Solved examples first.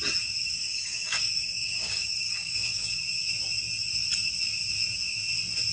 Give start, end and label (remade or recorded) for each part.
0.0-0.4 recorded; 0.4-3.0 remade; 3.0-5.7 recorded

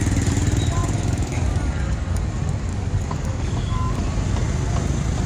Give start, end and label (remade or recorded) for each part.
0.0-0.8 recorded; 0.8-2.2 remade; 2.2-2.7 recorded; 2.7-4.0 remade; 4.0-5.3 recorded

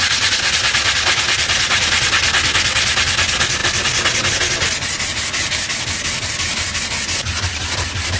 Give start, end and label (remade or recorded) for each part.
0.0-8.2 recorded

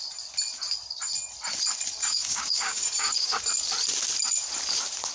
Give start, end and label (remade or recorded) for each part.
0.0-2.0 recorded; 2.0-3.3 remade; 3.3-5.1 recorded